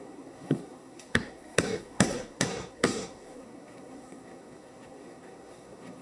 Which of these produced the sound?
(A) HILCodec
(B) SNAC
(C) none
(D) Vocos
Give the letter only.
B